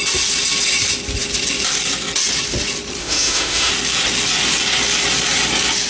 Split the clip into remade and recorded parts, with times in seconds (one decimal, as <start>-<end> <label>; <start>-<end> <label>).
0.0-3.0 recorded; 3.0-3.7 remade; 3.7-5.9 recorded